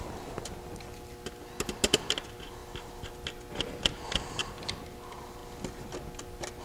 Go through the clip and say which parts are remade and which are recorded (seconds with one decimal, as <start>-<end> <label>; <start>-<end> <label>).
0.0-6.6 recorded